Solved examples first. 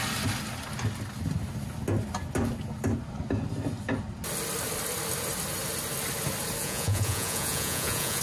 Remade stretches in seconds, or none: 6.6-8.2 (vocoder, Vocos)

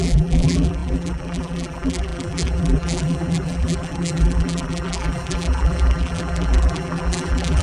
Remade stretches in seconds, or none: 0.0-7.6 (vocoder, BigVGAN v2)

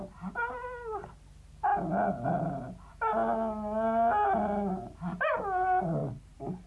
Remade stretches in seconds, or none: 6.0-6.7 (vocoder, BigVGAN v2)

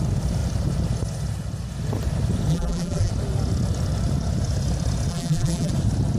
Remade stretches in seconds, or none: 2.5-3.1 (vocoder, BigVGAN v2); 5.1-5.7

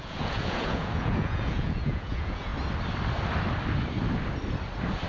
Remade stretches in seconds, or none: 0.0-2.5 (vocoder, Vocos)

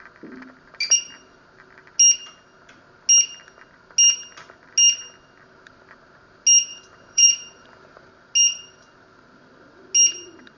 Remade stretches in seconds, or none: 6.7-8.1 (vocoder, BigVGAN v2)